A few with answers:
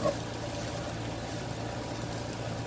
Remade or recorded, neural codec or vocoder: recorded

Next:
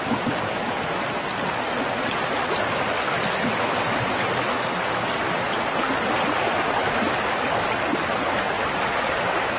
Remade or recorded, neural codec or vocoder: recorded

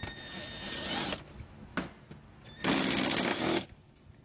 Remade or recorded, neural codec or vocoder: recorded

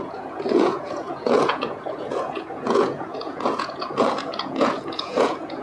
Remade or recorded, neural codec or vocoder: remade, vocoder, Vocos